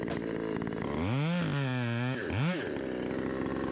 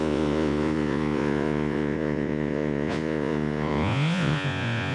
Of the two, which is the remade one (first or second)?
second